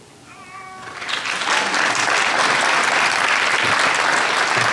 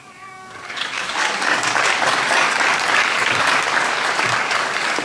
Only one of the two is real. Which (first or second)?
first